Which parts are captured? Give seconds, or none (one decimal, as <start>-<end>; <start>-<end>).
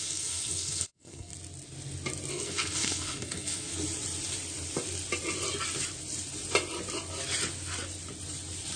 1.3-2.3; 3.7-8.8